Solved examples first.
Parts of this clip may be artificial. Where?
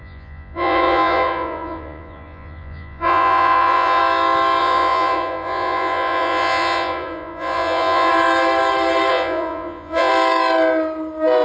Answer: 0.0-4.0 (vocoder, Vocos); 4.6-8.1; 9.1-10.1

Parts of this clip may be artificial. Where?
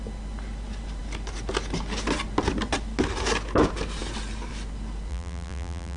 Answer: 5.1-6.0 (vocoder, BigVGAN v2)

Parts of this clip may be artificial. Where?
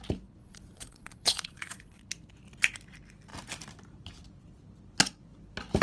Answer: 0.4-2.0 (vocoder, Vocos)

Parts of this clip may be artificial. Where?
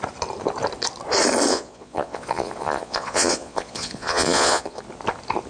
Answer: 1.5-4.8 (vocoder, Vocos)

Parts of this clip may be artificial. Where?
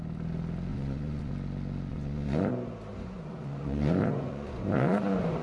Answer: 0.7-1.3 (vocoder, Vocos); 1.9-2.5; 2.9-5.4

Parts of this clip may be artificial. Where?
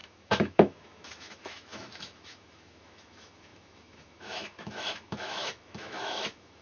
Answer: 0.0-6.6 (autoencoder, DAC-VAE)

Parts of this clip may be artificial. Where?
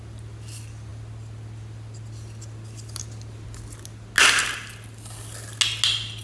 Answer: none